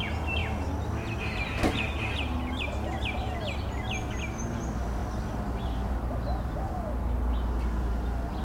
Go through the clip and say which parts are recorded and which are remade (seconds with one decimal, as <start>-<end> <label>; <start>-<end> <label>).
0.0-8.4 recorded